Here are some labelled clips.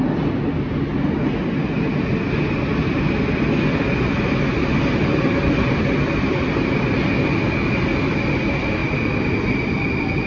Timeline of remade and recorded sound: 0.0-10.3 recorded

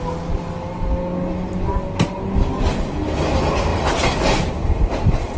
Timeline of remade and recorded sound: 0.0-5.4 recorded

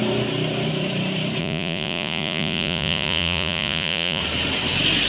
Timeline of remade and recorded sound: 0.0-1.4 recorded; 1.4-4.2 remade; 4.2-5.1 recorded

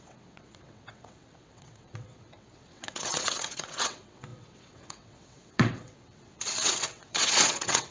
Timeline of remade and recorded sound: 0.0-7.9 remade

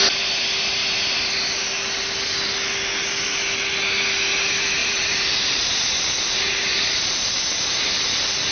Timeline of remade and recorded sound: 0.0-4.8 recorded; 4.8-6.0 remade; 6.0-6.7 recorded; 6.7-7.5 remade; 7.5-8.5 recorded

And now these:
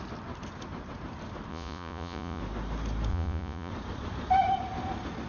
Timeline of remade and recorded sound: 0.0-1.5 recorded; 1.5-2.4 remade; 2.4-3.1 recorded; 3.1-3.7 remade; 3.7-5.3 recorded

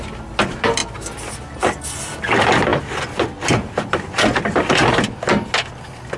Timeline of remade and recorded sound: 0.0-6.2 recorded

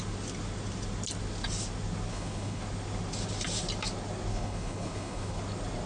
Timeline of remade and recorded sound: 0.0-2.1 recorded; 2.1-2.6 remade; 2.6-4.3 recorded; 4.3-5.4 remade; 5.4-5.9 recorded